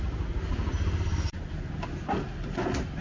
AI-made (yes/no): no